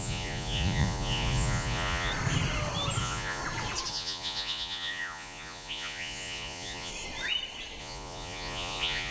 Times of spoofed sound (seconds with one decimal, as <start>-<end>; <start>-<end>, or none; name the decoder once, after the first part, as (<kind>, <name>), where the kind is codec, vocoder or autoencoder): 0.0-2.1 (vocoder, Vocos); 3.0-3.4; 3.9-6.9; 7.8-9.1